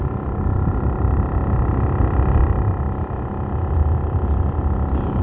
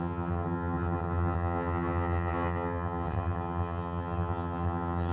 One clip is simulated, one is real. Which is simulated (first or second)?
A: second